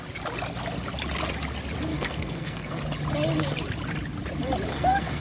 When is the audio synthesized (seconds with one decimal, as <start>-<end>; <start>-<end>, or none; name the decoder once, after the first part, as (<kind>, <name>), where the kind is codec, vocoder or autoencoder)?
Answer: 1.9-2.8 (codec, SNAC); 4.7-5.2